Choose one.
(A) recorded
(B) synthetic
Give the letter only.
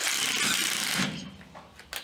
A